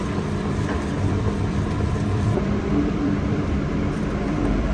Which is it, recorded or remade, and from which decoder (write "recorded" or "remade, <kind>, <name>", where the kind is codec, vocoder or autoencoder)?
remade, vocoder, BigVGAN v2